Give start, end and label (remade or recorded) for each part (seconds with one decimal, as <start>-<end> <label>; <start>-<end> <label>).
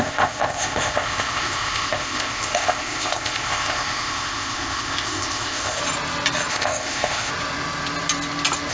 0.0-5.8 remade; 5.8-6.5 recorded; 6.5-7.3 remade; 7.3-8.7 recorded